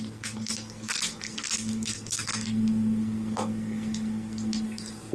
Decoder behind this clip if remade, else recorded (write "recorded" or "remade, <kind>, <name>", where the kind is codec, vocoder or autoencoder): remade, codec, SNAC